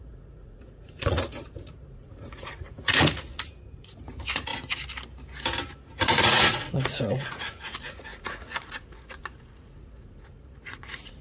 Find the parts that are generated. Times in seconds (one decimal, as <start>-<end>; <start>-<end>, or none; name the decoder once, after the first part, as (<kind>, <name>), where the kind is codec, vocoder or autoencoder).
0.0-4.5 (vocoder, Vocos); 6.2-11.2